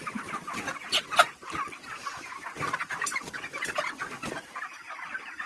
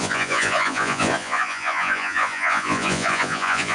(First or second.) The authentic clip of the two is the first